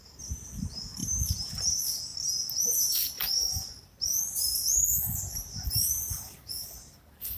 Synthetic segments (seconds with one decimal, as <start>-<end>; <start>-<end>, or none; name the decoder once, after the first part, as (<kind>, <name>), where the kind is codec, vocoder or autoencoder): none